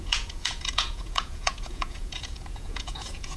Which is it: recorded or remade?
remade